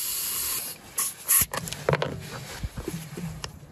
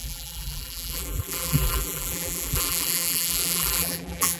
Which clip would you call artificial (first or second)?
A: second